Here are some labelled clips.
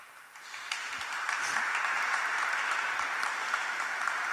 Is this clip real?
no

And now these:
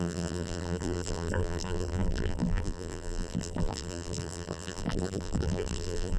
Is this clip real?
no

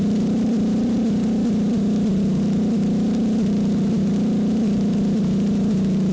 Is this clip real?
no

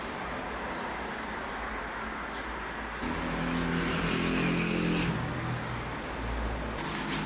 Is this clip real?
yes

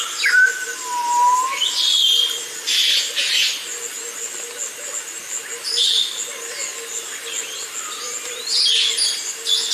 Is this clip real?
yes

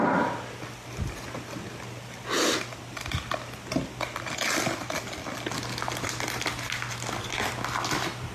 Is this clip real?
yes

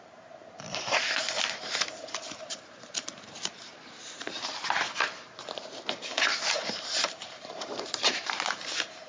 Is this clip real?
no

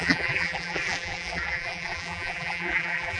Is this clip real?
no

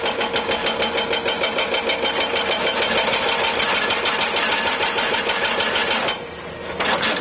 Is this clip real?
no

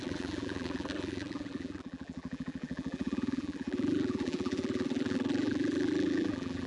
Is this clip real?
no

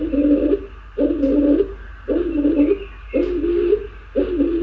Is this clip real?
yes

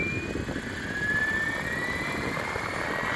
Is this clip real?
yes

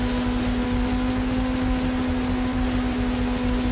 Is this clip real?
yes